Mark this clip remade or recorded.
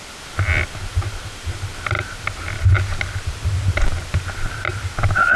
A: recorded